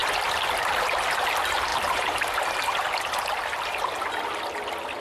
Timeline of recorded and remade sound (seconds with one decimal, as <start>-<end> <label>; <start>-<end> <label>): 0.0-1.7 recorded; 1.7-2.3 remade; 2.3-5.0 recorded